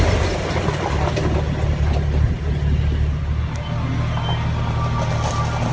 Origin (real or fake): real